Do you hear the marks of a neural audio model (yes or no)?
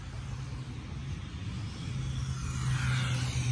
no